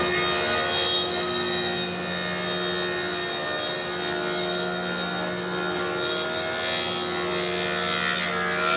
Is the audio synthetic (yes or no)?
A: no